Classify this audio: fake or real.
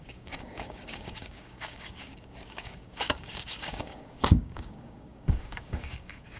fake